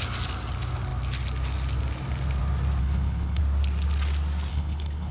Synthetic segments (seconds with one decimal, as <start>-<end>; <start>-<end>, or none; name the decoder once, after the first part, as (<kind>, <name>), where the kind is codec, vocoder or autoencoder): 2.8-3.4 (codec, HILCodec); 4.5-5.1